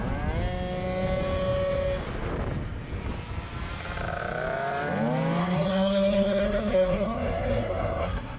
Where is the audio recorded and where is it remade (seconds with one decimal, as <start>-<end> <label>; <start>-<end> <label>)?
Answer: 0.0-5.4 recorded; 5.4-8.4 remade